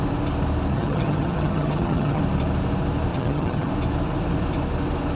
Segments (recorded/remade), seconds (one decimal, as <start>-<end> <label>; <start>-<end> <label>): 0.0-0.7 recorded; 0.7-2.2 remade; 2.2-3.1 recorded; 3.1-3.7 remade; 3.7-5.1 recorded